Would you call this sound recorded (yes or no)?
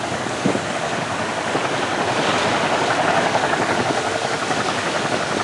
no